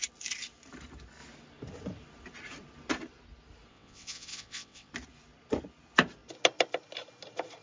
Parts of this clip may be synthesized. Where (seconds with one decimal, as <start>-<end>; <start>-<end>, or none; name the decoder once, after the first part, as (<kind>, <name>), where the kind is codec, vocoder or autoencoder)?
3.7-4.9 (vocoder, WaveNeXt)